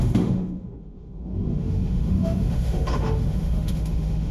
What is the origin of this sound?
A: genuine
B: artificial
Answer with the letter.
B